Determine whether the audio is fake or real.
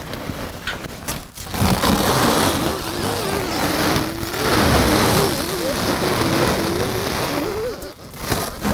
real